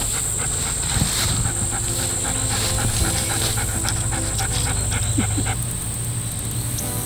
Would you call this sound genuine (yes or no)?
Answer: yes